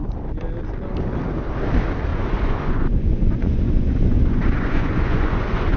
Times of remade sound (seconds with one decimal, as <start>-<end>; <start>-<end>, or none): 2.1-5.8